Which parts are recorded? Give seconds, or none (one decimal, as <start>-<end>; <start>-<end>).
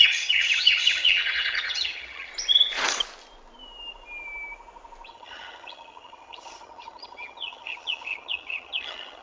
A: 2.3-5.1